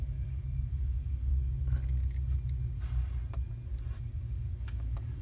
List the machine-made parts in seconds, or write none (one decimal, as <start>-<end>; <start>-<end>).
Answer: 0.0-1.3; 4.0-5.2